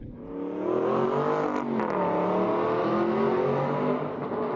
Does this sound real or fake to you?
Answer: real